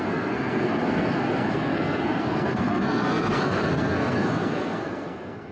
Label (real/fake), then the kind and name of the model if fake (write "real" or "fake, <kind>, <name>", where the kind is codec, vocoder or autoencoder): fake, codec, SNAC